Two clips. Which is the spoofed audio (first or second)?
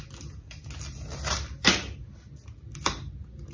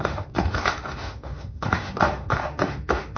second